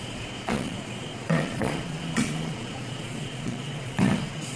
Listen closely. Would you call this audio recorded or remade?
remade